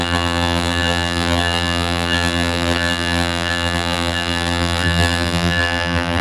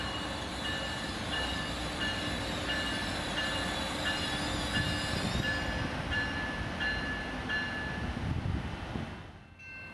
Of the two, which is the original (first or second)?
second